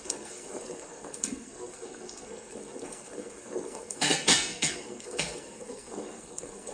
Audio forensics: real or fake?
fake